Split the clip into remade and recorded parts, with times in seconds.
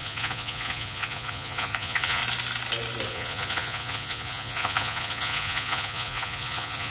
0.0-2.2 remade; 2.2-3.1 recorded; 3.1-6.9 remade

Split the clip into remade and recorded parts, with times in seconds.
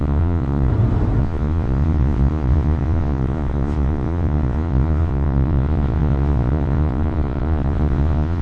0.0-0.7 remade; 0.7-1.2 recorded; 1.2-8.4 remade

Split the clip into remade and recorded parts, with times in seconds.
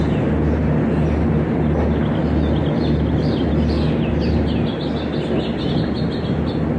0.0-6.8 recorded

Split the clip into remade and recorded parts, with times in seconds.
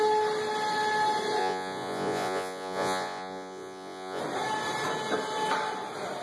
0.0-1.4 recorded; 1.4-4.2 remade; 4.2-6.2 recorded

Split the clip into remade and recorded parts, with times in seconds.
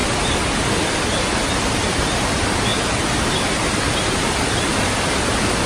0.0-5.7 recorded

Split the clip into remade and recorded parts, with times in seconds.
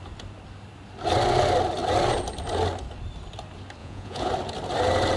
0.0-3.8 recorded; 3.8-4.3 remade; 4.3-5.2 recorded